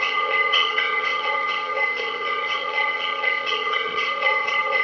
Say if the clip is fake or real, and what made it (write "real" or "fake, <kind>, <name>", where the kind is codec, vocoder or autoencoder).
fake, vocoder, HiFi-GAN